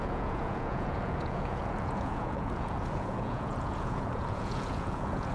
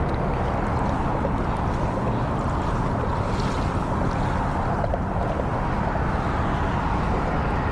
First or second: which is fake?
first